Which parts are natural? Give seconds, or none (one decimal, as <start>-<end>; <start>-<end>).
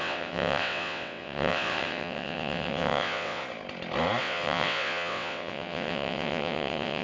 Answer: 3.4-4.2